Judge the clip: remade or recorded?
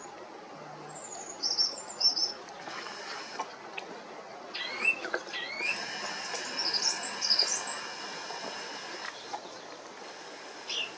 recorded